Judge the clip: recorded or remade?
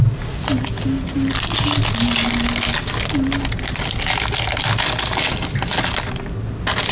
recorded